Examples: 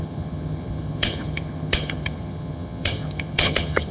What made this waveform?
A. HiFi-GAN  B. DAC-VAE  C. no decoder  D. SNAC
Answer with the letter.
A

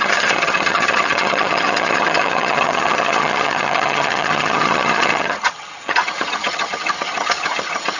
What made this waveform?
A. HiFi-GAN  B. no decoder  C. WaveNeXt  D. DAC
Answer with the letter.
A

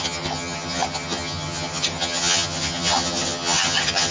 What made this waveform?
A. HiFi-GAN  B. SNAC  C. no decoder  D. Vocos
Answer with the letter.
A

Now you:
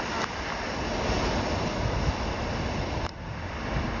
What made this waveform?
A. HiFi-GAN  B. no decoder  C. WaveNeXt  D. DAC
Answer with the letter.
B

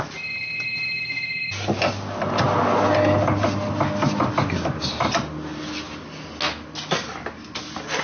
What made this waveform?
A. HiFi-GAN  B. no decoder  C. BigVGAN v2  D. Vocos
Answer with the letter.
B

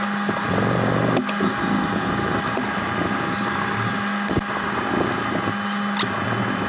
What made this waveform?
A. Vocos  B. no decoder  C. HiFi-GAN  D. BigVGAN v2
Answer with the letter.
B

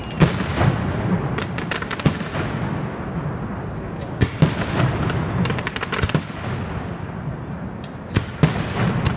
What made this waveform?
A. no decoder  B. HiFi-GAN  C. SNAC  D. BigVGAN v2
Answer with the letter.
A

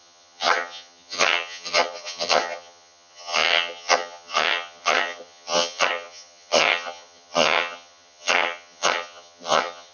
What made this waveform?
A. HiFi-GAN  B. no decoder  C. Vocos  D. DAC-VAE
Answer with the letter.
A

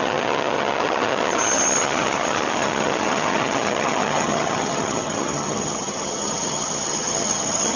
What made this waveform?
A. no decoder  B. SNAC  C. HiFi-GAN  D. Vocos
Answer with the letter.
C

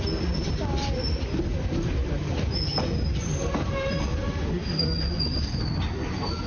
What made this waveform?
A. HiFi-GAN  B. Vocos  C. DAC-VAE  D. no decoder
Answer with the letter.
D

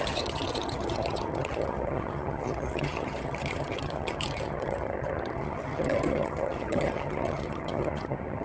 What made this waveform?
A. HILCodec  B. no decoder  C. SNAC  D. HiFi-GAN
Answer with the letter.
D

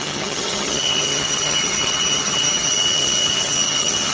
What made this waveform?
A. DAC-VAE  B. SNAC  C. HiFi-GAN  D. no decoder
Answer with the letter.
C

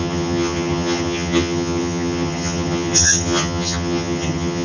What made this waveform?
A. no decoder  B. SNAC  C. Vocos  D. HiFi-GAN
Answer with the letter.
D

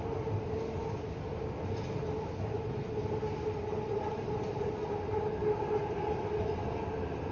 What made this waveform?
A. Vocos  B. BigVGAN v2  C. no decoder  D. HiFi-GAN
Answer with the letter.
C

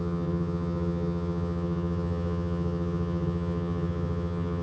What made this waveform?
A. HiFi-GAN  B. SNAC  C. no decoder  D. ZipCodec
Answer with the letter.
A